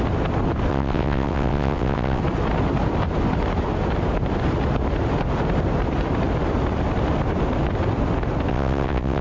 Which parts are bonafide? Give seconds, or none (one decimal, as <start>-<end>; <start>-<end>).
0.0-0.7; 2.2-8.5